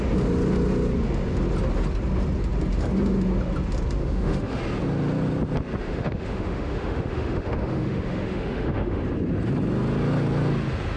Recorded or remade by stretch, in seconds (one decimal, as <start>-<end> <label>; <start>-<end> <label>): 0.0-4.0 recorded; 4.0-4.6 remade; 4.6-5.8 recorded; 5.8-9.0 remade; 9.0-11.0 recorded